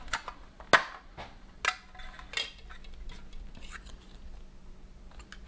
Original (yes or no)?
yes